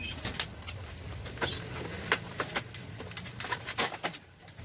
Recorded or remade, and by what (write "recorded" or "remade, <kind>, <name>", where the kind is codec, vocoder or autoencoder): recorded